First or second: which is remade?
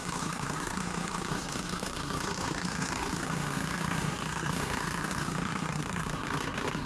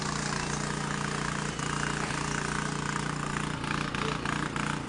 first